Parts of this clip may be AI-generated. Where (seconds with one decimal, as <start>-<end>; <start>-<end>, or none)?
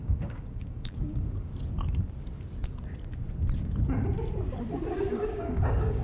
0.0-1.5; 5.1-6.0